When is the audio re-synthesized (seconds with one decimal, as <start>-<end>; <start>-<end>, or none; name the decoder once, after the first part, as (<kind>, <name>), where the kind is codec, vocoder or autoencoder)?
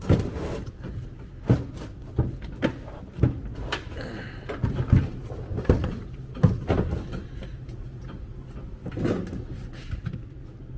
none